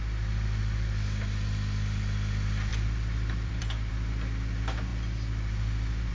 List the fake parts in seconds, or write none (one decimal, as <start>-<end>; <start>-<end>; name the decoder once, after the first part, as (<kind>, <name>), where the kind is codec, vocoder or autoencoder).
2.7-3.9 (vocoder, BigVGAN v2)